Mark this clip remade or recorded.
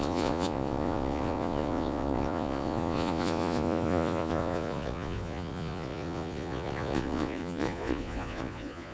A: remade